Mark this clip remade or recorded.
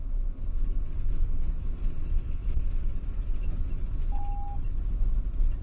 recorded